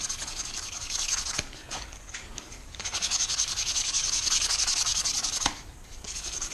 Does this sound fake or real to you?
fake